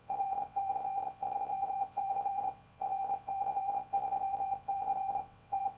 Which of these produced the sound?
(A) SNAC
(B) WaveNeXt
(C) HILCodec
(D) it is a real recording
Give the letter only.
B